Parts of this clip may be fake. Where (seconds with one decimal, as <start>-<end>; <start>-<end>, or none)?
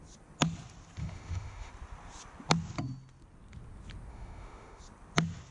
1.0-1.7; 4.1-4.8